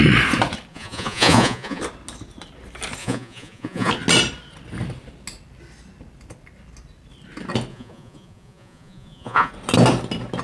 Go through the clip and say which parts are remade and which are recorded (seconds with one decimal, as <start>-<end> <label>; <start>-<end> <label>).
0.0-0.7 recorded; 0.7-1.8 remade; 1.8-3.0 recorded; 3.0-3.9 remade; 3.9-7.7 recorded; 7.7-9.5 remade; 9.5-10.4 recorded